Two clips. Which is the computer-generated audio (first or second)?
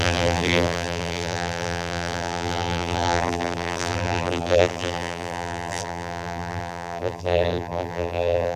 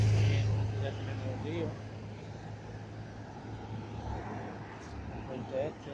first